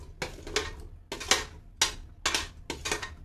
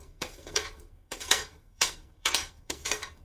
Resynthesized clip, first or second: second